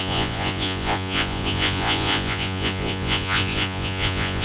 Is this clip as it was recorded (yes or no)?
no